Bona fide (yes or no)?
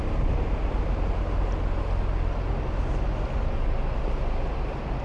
yes